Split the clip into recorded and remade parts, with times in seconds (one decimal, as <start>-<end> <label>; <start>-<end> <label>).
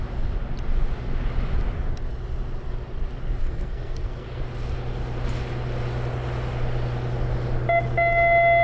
0.0-3.4 recorded; 3.4-4.4 remade; 4.4-8.6 recorded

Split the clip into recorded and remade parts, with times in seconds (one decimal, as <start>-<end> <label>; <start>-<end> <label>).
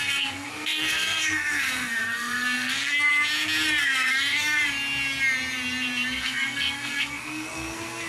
0.0-3.1 remade; 3.1-3.8 recorded; 3.8-4.6 remade; 4.6-6.2 recorded; 6.2-8.1 remade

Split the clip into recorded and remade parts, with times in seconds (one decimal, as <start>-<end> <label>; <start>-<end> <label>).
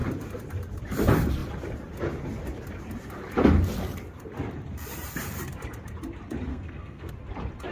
0.0-6.5 recorded; 6.5-7.1 remade; 7.1-7.7 recorded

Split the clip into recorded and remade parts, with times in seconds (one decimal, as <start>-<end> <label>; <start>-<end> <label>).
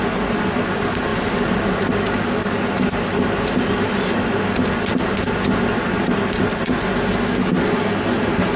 0.0-8.6 recorded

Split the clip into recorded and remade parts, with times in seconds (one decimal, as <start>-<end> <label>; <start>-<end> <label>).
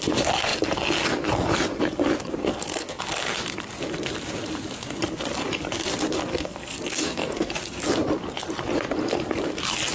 0.0-2.4 recorded; 2.4-3.0 remade; 3.0-6.3 recorded; 6.3-7.5 remade; 7.5-9.9 recorded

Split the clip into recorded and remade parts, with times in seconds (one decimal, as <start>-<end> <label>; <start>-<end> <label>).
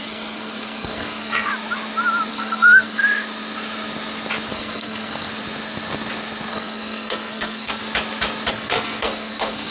0.0-1.5 remade; 1.5-2.3 recorded; 2.3-3.0 remade; 3.0-4.5 recorded; 4.5-5.3 remade; 5.3-6.5 recorded; 6.5-7.8 remade; 7.8-8.5 recorded; 8.5-9.7 remade